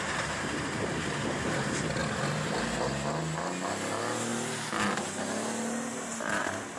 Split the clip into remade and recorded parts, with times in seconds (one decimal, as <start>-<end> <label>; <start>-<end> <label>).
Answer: 0.0-6.8 recorded